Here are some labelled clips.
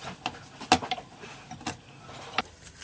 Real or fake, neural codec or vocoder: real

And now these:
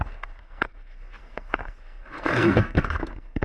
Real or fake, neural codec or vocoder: fake, codec, SNAC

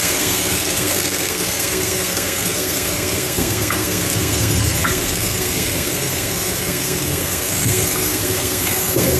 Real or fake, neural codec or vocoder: fake, codec, SNAC